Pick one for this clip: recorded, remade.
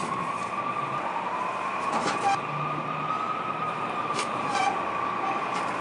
remade